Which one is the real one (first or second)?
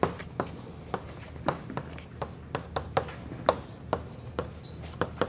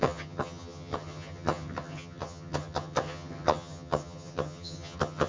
first